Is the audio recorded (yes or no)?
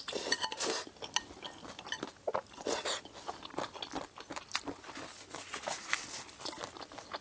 yes